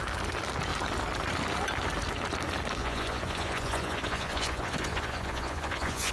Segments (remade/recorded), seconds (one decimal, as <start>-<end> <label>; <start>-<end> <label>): 0.0-2.8 recorded; 2.8-6.1 remade